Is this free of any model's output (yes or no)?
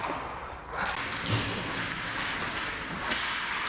yes